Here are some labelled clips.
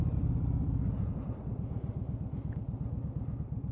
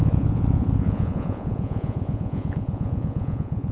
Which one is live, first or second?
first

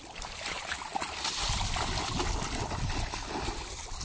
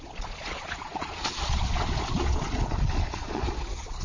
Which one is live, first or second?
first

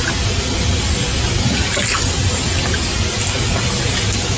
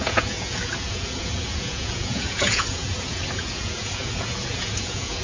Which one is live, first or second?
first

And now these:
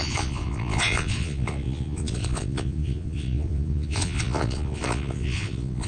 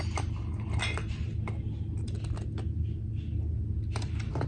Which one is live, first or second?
second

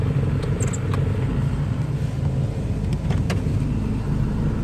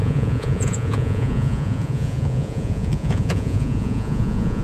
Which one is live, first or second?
first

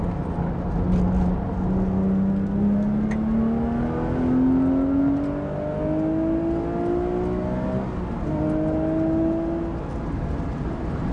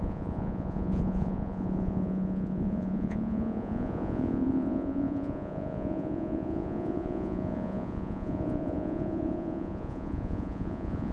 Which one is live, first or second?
first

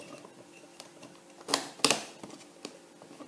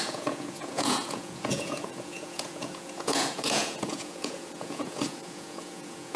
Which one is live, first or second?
first